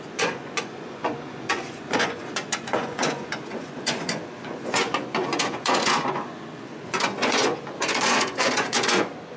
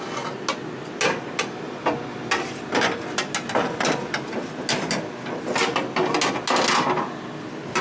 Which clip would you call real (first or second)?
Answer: second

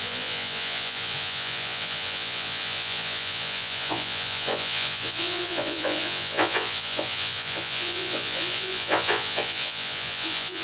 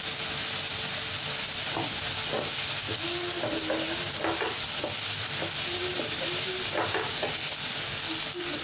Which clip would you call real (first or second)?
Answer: second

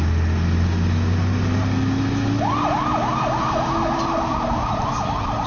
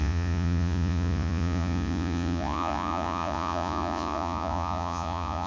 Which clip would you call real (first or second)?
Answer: first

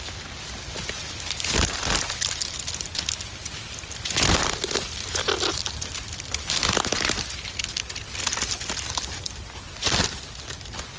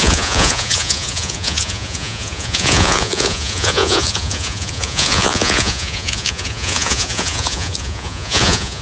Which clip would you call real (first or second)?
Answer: first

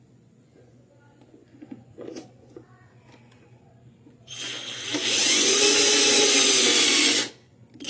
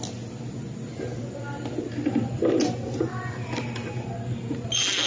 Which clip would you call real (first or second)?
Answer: second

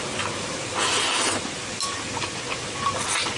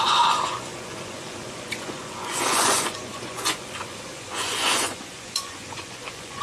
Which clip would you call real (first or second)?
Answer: first